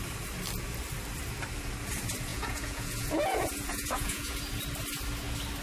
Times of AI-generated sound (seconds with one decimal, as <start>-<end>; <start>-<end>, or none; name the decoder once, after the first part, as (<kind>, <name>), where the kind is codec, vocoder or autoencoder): 2.3-4.4 (vocoder, Vocos)